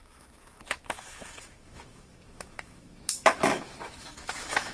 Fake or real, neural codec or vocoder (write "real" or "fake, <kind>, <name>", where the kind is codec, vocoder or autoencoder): fake, autoencoder, DAC-VAE